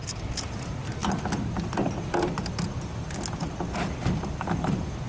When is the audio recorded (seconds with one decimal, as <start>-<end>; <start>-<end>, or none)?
0.0-5.1